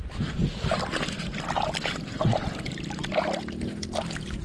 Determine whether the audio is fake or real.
real